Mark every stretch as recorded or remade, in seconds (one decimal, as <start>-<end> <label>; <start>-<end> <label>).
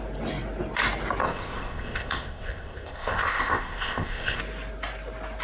0.0-1.2 recorded; 1.2-4.4 remade; 4.4-5.4 recorded